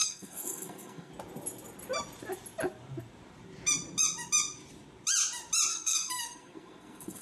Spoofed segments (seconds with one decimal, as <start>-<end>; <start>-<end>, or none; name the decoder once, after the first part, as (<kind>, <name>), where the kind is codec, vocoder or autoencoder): 0.0-1.1 (codec, SNAC); 5.7-7.2